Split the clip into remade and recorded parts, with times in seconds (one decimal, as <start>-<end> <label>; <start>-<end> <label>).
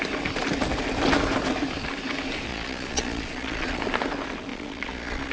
0.0-2.5 recorded; 2.5-3.8 remade; 3.8-4.5 recorded; 4.5-5.3 remade